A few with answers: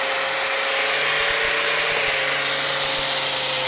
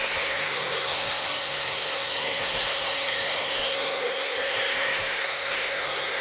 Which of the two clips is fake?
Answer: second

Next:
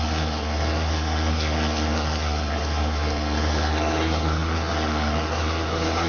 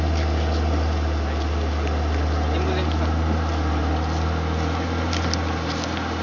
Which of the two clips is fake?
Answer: first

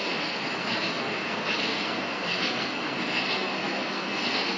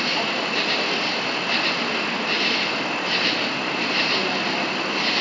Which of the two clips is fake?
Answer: first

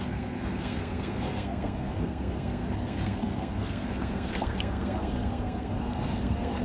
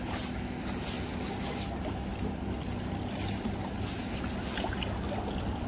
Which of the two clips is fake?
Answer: first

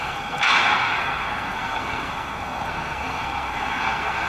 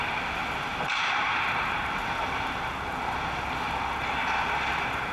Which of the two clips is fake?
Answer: first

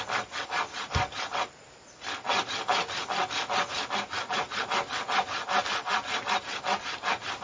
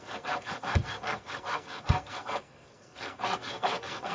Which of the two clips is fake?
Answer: second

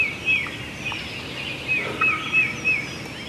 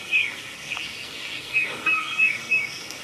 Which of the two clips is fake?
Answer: second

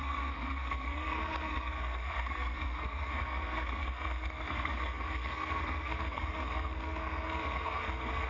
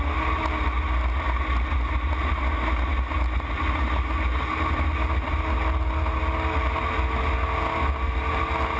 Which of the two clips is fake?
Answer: first